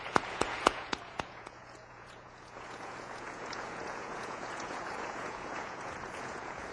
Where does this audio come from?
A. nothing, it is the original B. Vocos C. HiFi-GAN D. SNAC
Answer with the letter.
B